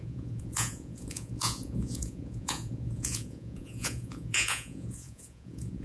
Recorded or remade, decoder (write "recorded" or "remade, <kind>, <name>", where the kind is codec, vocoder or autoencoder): remade, vocoder, Vocos